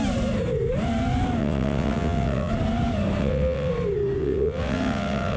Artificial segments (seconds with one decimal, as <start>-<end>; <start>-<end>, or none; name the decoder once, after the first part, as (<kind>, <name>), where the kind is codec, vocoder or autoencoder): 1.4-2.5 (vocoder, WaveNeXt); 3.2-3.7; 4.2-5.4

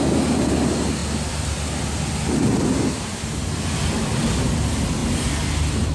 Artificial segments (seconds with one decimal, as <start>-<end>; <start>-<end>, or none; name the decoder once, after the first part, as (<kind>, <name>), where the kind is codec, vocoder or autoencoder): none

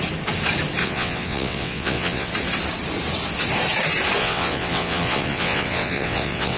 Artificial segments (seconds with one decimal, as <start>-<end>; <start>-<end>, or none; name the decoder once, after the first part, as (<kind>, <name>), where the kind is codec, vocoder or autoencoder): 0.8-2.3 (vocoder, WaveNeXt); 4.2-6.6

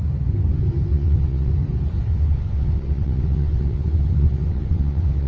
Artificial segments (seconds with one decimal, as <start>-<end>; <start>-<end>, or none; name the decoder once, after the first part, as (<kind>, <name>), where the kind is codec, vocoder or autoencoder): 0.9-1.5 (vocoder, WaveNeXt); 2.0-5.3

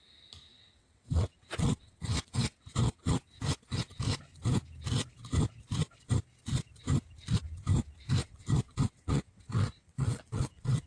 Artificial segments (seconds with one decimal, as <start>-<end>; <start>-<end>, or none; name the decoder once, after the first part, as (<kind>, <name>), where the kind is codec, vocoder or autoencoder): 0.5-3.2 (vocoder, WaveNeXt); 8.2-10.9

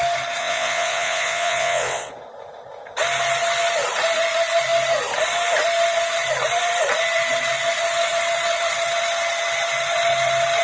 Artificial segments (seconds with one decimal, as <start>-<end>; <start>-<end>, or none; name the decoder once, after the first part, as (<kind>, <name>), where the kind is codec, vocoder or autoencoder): 0.4-2.1 (vocoder, WaveNeXt)

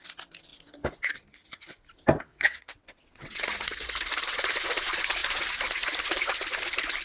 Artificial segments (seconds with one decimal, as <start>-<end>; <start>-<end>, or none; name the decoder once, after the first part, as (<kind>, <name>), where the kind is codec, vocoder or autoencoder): 2.3-3.8 (vocoder, WaveNeXt)